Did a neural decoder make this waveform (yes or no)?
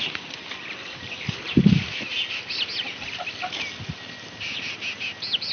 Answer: no